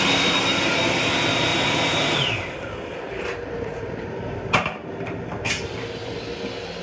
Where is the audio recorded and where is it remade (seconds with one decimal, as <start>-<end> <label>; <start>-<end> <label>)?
0.0-1.5 recorded; 1.5-5.6 remade; 5.6-6.8 recorded